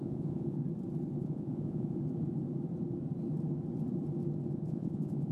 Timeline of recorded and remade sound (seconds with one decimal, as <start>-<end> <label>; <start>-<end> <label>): 0.0-0.6 remade; 0.6-1.2 recorded; 1.2-2.0 remade; 2.0-4.5 recorded; 4.5-5.3 remade